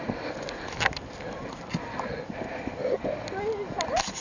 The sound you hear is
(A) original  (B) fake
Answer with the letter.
A